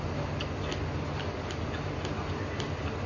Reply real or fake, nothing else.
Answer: real